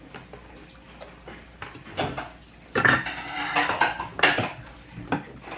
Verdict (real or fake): real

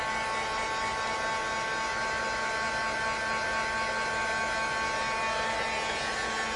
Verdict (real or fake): real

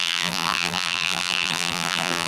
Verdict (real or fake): fake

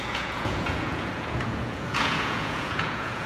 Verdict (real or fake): fake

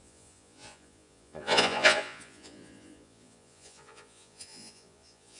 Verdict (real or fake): fake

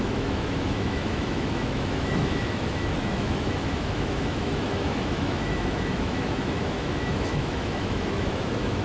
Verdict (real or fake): fake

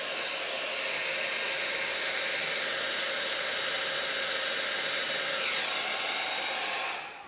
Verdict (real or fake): real